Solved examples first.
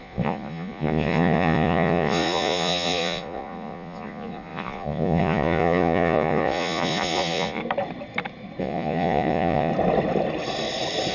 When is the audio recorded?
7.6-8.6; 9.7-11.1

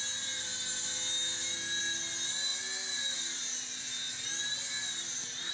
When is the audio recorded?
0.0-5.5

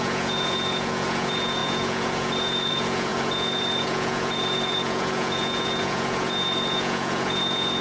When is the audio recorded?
none

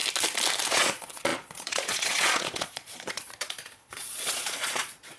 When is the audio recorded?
0.0-0.7

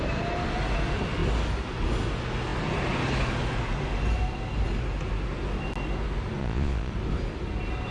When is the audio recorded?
0.0-6.4; 6.9-7.9

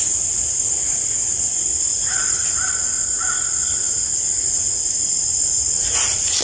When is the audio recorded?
0.0-1.9; 2.7-3.6